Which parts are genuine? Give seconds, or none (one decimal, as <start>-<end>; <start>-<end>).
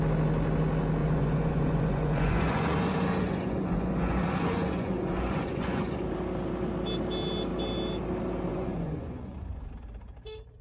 0.0-1.0; 6.0-8.5; 9.7-10.6